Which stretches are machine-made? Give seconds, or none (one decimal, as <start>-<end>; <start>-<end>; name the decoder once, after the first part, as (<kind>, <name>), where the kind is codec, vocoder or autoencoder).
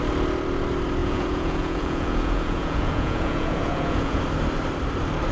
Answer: 1.0-4.2 (vocoder, Vocos)